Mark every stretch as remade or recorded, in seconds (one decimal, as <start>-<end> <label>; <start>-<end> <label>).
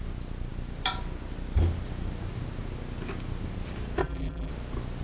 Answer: 0.0-4.0 recorded; 4.0-4.5 remade; 4.5-5.0 recorded